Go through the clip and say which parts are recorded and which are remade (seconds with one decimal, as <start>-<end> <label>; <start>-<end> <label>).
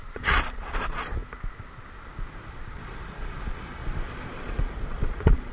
0.0-1.2 remade; 1.2-2.7 recorded; 2.7-3.8 remade; 3.8-4.4 recorded; 4.4-5.5 remade